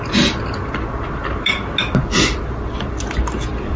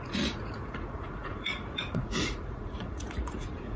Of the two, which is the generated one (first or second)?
second